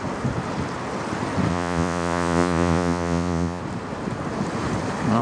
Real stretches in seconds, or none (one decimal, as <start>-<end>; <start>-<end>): 0.0-1.5; 3.6-5.2